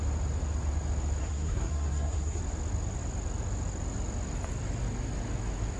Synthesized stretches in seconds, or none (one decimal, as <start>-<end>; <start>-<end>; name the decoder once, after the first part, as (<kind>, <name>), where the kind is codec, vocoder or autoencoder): 1.2-2.4 (codec, SNAC)